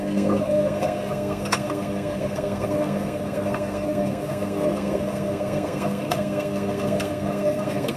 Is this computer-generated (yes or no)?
yes